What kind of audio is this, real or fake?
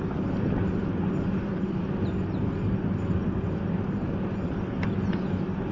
real